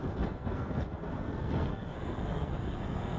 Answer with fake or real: fake